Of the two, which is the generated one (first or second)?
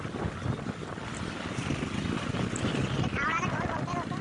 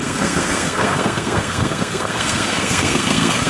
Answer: second